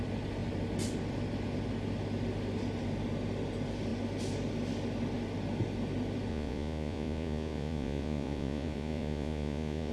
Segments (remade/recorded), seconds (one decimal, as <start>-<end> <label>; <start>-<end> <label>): 0.0-6.3 recorded; 6.3-9.9 remade